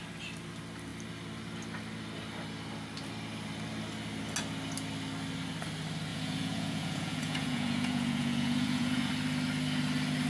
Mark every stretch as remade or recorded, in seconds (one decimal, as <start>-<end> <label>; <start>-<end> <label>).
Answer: 0.0-6.1 recorded; 6.1-9.1 remade; 9.1-10.3 recorded